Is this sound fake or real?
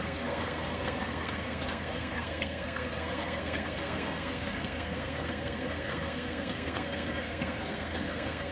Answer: fake